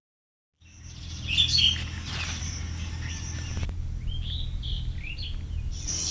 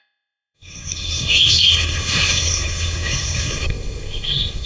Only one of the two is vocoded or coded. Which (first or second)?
second